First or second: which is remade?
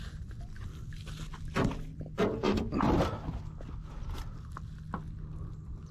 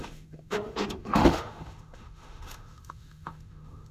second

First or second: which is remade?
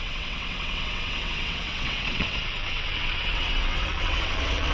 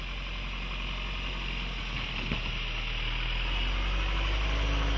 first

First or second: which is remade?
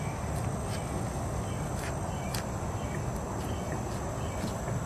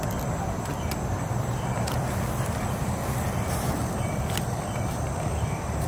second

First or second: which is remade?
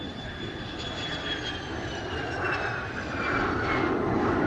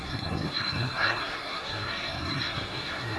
second